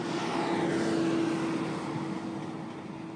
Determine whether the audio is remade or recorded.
recorded